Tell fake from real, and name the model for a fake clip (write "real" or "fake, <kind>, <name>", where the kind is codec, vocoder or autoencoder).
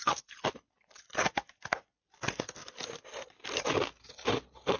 real